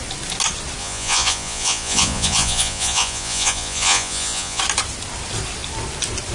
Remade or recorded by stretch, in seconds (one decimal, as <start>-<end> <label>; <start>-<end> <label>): 0.0-0.8 recorded; 0.8-4.6 remade; 4.6-6.3 recorded